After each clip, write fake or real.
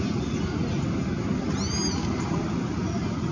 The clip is real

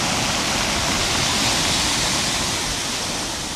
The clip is real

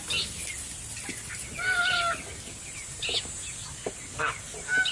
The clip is real